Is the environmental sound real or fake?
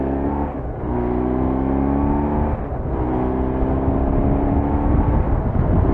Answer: real